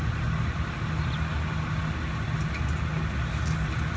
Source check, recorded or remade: recorded